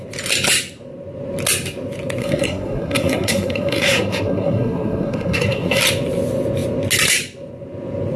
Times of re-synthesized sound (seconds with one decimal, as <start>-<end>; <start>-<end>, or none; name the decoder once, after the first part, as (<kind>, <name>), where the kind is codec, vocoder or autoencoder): 2.2-5.8 (codec, SNAC)